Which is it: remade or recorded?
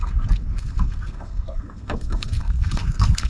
remade